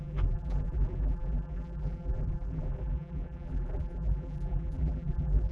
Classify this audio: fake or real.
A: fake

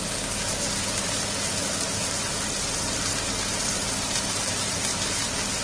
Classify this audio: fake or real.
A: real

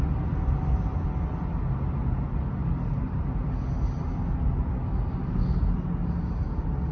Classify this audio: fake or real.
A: real